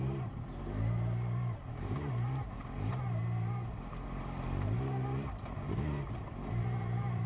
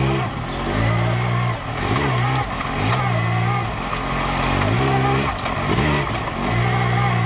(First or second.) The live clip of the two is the second